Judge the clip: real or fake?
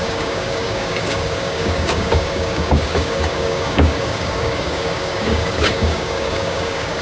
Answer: fake